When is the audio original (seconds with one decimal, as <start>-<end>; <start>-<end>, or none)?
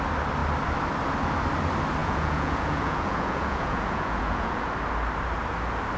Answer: 0.0-2.0; 4.7-6.0